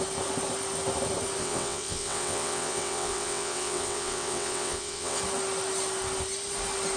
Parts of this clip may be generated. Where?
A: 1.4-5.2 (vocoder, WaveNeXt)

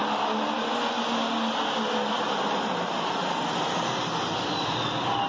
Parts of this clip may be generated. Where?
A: none

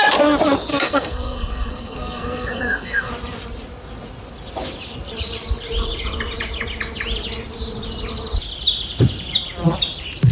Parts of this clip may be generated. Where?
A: 0.7-3.1 (codec, SNAC)

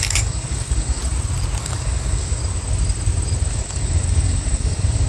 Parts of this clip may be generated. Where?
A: 0.0-1.0 (codec, DAC); 1.6-2.4; 3.5-5.1